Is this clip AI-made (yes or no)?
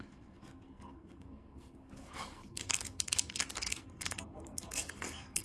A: yes